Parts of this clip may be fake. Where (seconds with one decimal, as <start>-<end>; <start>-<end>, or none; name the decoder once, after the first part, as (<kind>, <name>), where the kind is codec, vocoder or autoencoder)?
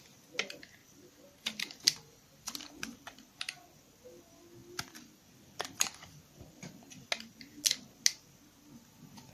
0.8-2.7 (vocoder, BigVGAN v2); 4.6-6.7